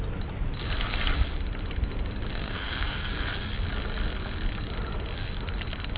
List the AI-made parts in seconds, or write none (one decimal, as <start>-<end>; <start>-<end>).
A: 2.3-3.1